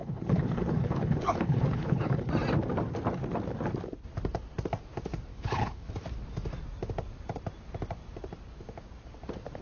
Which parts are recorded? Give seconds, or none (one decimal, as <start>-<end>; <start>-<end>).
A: 2.3-5.3; 5.9-9.6